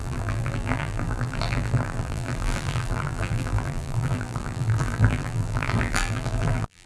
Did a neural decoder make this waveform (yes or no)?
yes